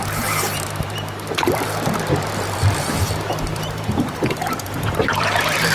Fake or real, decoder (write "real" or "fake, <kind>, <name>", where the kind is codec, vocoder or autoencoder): fake, vocoder, BigVGAN v2